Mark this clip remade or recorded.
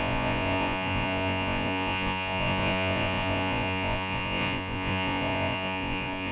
remade